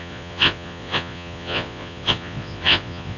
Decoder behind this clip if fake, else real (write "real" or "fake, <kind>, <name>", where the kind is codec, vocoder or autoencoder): fake, vocoder, Vocos